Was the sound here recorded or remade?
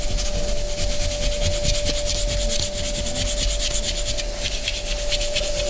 recorded